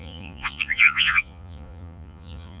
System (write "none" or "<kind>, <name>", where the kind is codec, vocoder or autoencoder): vocoder, Vocos